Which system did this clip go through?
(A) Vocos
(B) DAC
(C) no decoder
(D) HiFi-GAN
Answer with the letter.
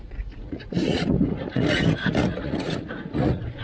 A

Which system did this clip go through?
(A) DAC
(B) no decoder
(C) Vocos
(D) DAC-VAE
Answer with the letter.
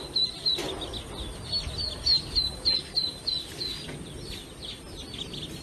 B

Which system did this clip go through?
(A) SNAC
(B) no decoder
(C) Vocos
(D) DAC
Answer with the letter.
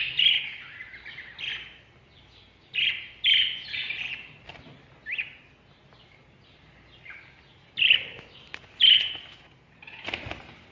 B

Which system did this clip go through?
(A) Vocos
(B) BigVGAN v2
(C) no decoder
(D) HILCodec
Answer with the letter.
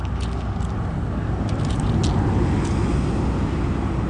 C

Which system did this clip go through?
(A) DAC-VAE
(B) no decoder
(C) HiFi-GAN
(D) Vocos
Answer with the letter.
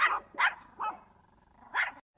B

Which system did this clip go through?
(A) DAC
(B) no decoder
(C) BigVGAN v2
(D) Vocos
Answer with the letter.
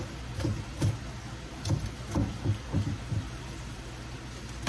B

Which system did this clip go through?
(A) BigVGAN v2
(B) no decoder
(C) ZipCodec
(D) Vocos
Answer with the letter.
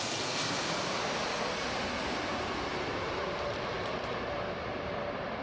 B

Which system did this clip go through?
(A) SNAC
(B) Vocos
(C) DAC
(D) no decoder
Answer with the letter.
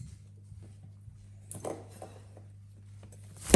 D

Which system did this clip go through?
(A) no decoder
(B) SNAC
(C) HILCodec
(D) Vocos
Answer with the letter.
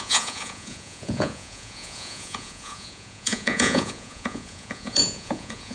D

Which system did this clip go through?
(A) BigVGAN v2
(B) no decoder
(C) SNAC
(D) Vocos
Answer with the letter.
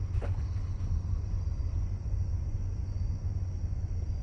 D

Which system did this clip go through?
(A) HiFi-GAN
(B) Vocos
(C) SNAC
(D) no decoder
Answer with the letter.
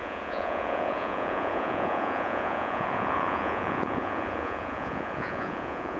B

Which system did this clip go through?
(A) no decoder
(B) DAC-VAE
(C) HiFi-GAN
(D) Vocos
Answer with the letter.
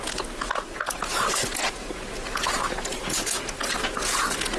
A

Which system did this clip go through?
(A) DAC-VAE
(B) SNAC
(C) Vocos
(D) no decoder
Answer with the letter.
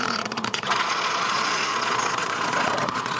C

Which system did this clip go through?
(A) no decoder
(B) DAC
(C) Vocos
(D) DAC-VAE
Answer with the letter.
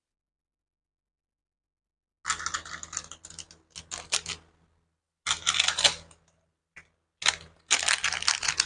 A